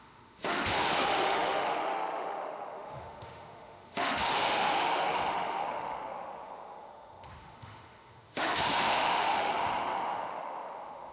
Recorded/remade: remade